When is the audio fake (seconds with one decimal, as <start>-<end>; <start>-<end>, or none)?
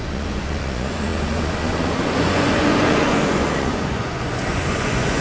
0.0-5.2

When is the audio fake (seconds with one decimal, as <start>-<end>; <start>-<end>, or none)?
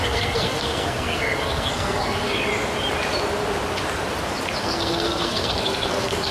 0.0-2.5; 4.6-6.3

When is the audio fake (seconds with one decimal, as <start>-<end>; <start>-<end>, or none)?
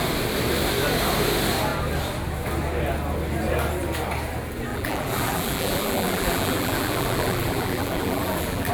4.7-8.7